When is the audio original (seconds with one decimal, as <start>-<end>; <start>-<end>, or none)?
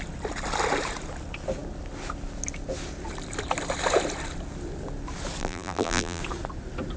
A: 0.0-5.4; 6.2-7.0